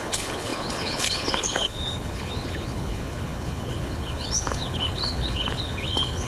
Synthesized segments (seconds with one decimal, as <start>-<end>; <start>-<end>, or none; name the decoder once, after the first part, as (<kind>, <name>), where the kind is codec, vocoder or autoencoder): 0.0-6.3 (codec, HILCodec)